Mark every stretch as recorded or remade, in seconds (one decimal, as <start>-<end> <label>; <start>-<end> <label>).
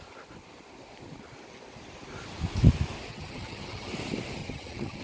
0.0-3.1 recorded; 3.1-3.9 remade; 3.9-4.4 recorded; 4.4-5.0 remade